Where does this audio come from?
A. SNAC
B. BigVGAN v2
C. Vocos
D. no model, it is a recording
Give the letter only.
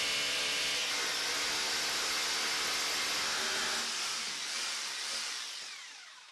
D